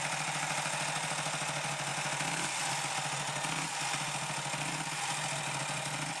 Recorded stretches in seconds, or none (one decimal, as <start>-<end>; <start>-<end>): 0.0-6.2